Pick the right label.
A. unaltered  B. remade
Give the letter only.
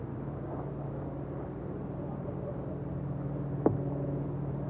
A